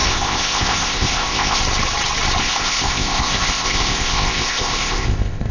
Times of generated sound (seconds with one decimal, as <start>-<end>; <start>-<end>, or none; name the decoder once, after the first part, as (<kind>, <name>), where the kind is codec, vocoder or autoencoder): 0.0-1.6 (codec, ZipCodec); 2.4-5.5